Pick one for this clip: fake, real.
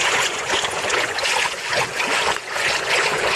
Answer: fake